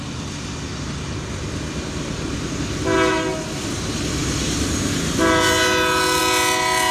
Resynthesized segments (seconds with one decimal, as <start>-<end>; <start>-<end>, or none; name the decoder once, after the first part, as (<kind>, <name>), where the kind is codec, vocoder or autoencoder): none